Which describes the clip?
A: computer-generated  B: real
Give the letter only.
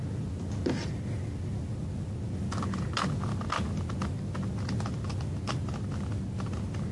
B